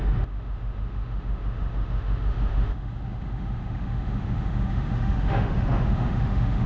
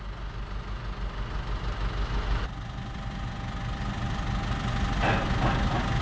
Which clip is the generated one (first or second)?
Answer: first